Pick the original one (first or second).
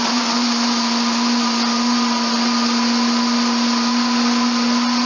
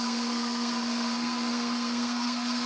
first